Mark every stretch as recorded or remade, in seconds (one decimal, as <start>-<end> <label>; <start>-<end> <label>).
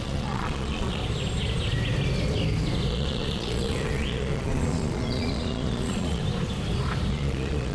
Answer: 0.0-1.0 remade; 1.0-2.9 recorded; 2.9-6.2 remade; 6.2-7.1 recorded; 7.1-7.7 remade